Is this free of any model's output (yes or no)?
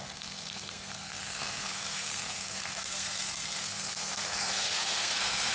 no